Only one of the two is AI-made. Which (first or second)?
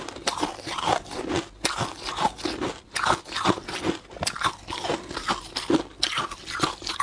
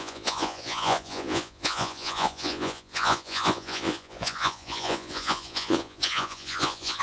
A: second